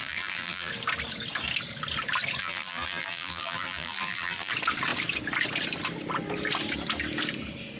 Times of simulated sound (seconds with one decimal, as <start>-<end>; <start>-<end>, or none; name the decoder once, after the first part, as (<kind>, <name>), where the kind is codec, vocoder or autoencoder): 0.0-0.7 (vocoder, BigVGAN v2); 2.4-4.5

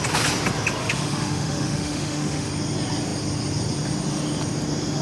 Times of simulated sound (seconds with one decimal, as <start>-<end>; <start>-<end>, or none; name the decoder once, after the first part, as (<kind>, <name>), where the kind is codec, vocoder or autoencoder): 0.8-2.5 (autoencoder, DAC-VAE)

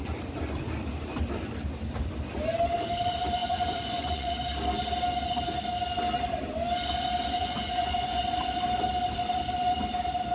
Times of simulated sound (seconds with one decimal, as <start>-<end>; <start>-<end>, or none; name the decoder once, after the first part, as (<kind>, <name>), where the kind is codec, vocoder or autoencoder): 3.4-4.3 (vocoder, Vocos); 7.4-8.2

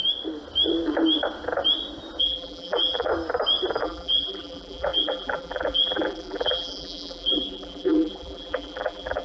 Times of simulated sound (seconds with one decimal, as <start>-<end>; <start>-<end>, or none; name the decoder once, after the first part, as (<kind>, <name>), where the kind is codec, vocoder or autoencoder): 2.2-3.1 (vocoder, BigVGAN v2); 3.8-9.2

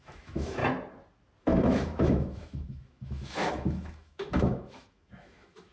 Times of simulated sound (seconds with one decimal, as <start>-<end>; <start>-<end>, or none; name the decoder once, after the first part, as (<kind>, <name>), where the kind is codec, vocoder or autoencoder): 0.0-0.6 (autoencoder, DAC-VAE); 1.4-5.7

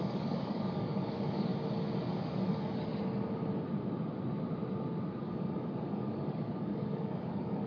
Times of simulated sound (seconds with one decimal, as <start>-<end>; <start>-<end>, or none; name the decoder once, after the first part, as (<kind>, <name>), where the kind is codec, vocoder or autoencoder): 0.0-1.5 (codec, DAC); 2.1-2.9; 5.2-7.7

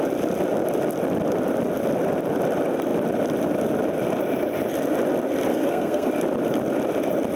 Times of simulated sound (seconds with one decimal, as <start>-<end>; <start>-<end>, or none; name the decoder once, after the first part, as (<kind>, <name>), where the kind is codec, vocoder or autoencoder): 5.5-6.1 (codec, SNAC)